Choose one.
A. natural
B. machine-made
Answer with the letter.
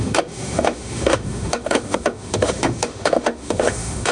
B